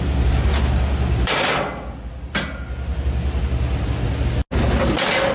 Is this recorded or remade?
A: recorded